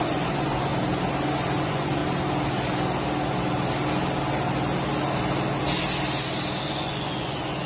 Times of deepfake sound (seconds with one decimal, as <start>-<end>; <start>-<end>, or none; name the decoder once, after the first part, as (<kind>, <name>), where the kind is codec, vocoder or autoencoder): 0.0-0.7 (vocoder, Vocos); 1.6-2.0; 6.6-7.7